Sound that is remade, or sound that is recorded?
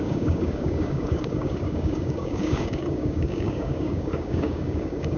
remade